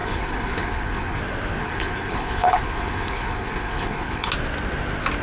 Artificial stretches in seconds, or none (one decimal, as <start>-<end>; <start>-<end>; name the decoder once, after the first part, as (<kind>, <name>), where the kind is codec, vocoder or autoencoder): 0.0-1.2 (codec, HILCodec); 1.6-4.3